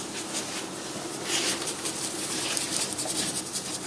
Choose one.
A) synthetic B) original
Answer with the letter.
A